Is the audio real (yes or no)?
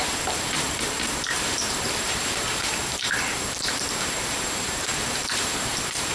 no